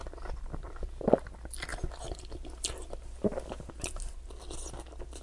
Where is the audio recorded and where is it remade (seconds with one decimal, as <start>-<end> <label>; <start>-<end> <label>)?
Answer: 0.0-5.2 recorded

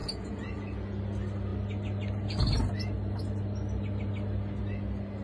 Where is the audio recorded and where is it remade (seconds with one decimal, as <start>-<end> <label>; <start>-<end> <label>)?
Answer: 0.0-1.0 remade; 1.0-5.2 recorded

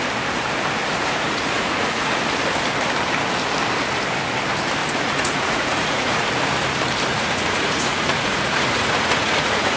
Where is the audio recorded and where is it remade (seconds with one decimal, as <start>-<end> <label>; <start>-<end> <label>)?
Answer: 0.0-0.8 recorded; 0.8-2.2 remade; 2.2-4.8 recorded; 4.8-6.2 remade; 6.2-7.1 recorded; 7.1-9.8 remade

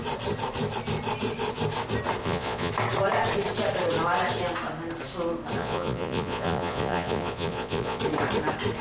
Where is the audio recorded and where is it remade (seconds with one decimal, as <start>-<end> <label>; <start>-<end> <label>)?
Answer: 0.0-2.2 recorded; 2.2-2.7 remade; 2.7-5.6 recorded; 5.6-8.0 remade; 8.0-8.8 recorded

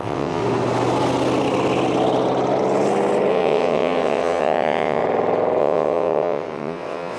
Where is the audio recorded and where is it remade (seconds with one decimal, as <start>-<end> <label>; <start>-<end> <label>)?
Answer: 0.0-0.4 remade; 0.4-3.3 recorded; 3.3-5.0 remade; 5.0-5.6 recorded; 5.6-7.2 remade

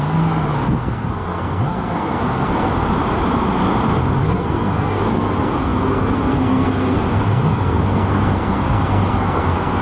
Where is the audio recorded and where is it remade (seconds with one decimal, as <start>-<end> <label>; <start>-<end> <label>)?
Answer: 0.0-2.7 remade; 2.7-4.2 recorded; 4.2-9.8 remade

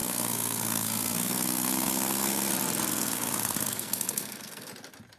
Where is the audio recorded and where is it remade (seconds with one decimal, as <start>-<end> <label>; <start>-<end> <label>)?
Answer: 0.0-2.5 remade; 2.5-2.9 recorded; 2.9-4.7 remade; 4.7-5.2 recorded